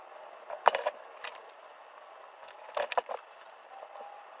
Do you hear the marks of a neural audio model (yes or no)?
no